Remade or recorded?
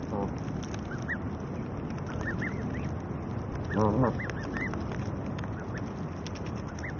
recorded